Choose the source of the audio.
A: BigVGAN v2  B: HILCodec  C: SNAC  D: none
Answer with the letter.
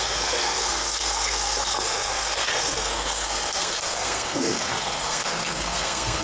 C